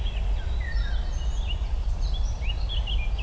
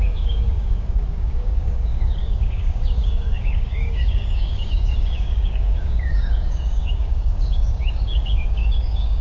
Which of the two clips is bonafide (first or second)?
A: first